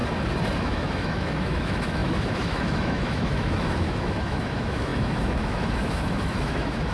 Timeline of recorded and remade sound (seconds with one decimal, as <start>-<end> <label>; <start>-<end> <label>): 0.0-0.6 recorded; 0.6-6.9 remade